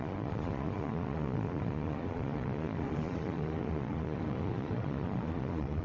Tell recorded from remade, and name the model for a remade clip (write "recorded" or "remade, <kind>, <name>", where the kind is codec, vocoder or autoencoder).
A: remade, vocoder, Vocos